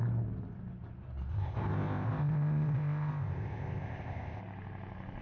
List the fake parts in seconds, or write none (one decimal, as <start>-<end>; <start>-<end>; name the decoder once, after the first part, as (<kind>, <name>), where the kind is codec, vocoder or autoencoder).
1.3-4.4 (codec, ZipCodec)